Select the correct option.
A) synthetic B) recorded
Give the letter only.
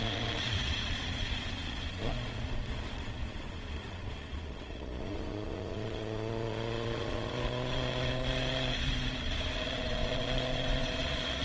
A